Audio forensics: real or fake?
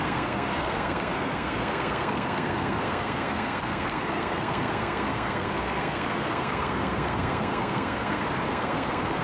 fake